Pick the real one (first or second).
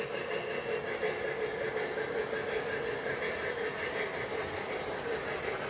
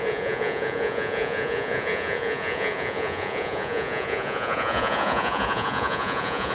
first